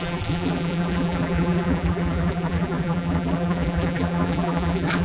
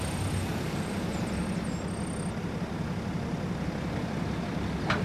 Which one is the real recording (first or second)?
second